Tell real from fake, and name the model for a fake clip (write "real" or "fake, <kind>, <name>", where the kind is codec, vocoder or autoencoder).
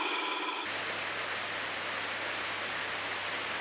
real